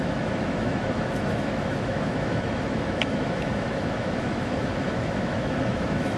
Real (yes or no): no